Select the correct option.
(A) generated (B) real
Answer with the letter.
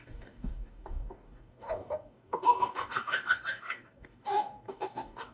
A